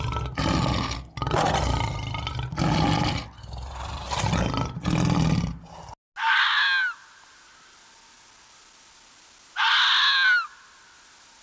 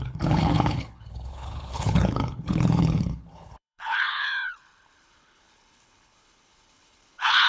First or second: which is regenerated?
second